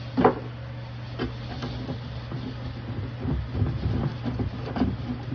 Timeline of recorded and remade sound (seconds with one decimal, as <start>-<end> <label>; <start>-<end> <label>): 0.0-5.3 recorded